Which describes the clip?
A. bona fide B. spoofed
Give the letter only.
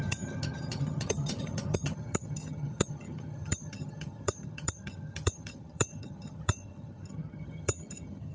B